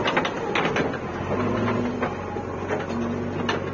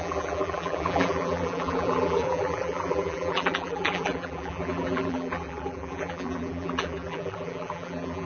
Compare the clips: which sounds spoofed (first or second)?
second